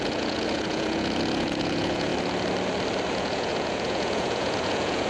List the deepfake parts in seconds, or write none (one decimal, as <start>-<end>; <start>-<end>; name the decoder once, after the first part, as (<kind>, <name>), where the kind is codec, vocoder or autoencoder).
0.0-2.1 (vocoder, Vocos); 3.1-5.1